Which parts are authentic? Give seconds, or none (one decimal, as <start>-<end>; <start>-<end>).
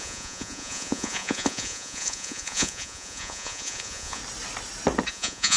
4.2-5.1